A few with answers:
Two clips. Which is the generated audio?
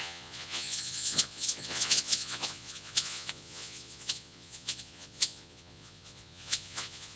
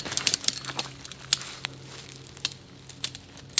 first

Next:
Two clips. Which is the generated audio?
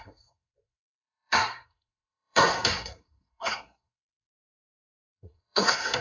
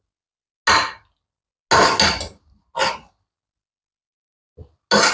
first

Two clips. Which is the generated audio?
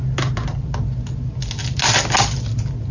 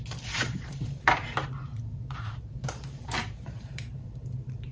second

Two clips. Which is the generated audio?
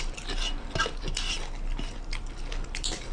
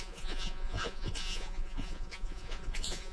second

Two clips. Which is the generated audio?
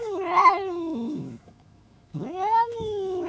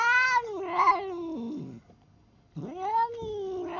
first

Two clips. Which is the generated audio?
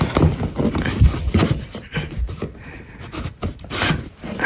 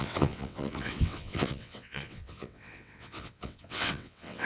second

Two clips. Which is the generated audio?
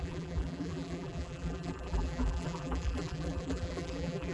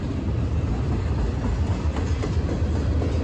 first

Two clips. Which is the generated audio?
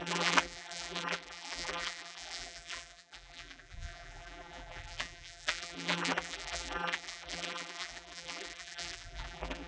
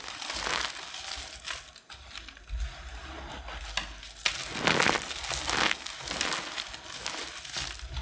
first